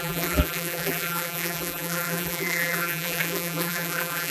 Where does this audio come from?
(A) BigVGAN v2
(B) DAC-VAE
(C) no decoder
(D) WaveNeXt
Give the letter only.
A